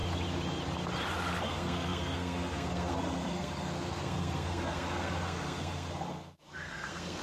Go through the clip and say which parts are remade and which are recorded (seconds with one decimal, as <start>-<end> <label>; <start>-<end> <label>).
0.0-1.4 recorded; 1.4-7.2 remade